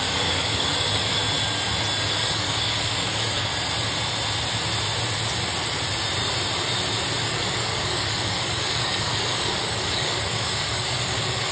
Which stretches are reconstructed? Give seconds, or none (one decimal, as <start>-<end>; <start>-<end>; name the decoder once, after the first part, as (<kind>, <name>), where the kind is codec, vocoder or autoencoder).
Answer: 0.0-1.2 (codec, DAC); 2.1-3.5; 7.2-11.5